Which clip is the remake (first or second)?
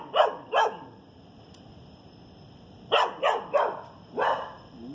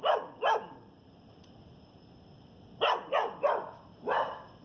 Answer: first